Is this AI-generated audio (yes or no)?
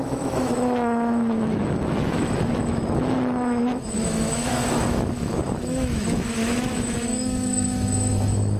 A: yes